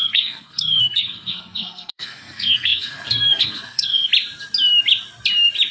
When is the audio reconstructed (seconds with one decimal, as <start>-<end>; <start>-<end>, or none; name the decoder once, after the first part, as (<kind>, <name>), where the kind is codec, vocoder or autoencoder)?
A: 0.0-4.1 (codec, SNAC)